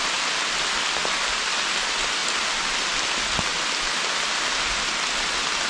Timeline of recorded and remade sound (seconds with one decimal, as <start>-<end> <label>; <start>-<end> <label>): 0.0-5.7 recorded